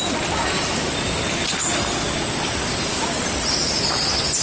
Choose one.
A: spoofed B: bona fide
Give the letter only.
B